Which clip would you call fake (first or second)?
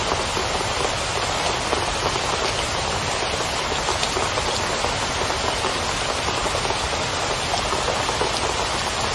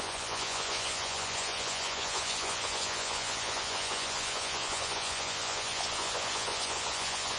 second